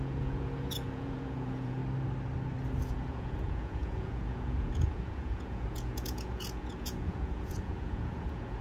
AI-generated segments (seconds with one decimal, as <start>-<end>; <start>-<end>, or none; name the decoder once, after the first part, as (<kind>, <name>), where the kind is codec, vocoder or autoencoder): 0.0-1.8 (vocoder, Vocos); 2.9-8.6